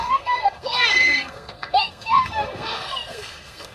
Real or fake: fake